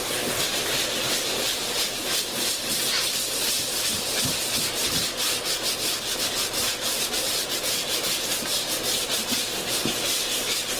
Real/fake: fake